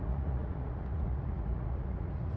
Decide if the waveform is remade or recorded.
remade